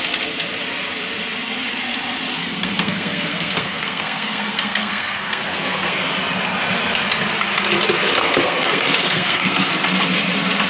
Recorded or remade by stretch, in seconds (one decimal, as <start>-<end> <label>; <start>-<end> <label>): 0.0-2.4 recorded; 2.4-6.1 remade; 6.1-8.2 recorded; 8.2-9.6 remade; 9.6-10.7 recorded